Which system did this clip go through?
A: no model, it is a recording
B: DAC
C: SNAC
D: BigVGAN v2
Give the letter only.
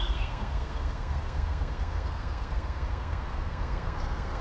C